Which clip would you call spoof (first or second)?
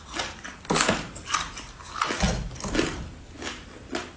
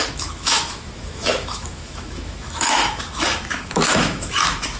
second